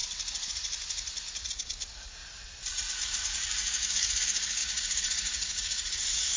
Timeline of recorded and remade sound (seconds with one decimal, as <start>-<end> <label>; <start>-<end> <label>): 0.0-1.5 recorded; 1.5-2.2 remade; 2.2-2.9 recorded; 2.9-6.4 remade